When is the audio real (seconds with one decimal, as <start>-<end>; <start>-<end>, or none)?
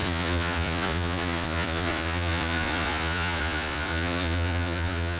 none